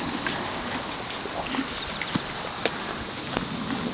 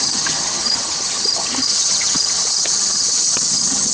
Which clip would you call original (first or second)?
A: first